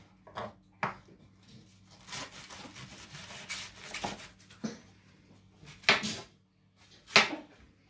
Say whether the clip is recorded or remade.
recorded